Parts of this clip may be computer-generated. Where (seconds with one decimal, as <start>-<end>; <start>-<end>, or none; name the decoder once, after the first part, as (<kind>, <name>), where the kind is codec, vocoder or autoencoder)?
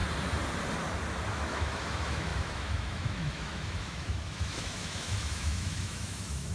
1.3-6.5 (autoencoder, DAC-VAE)